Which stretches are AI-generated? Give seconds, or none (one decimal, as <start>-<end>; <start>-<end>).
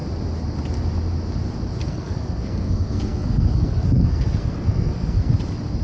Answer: 1.8-5.3